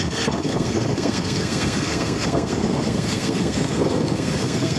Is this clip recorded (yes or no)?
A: no